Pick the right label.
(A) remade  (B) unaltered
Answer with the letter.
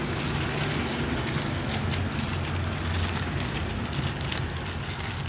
B